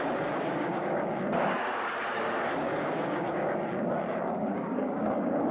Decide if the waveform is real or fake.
fake